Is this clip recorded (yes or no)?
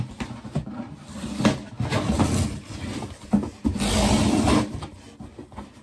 yes